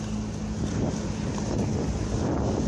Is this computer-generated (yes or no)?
no